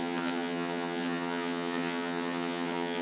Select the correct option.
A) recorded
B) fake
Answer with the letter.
B